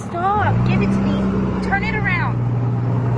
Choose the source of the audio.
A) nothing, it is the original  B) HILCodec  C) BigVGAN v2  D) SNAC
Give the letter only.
A